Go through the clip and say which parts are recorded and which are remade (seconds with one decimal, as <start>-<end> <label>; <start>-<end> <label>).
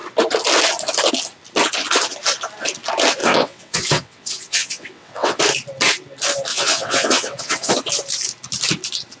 0.0-3.2 recorded; 3.2-5.4 remade; 5.4-6.5 recorded; 6.5-7.7 remade; 7.7-9.2 recorded